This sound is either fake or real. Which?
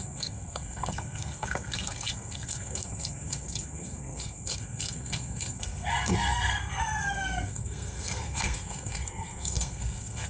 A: fake